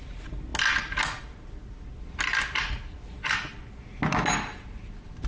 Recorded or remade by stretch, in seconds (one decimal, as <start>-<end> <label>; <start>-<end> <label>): 0.0-5.3 recorded